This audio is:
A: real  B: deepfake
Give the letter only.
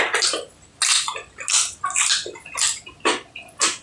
A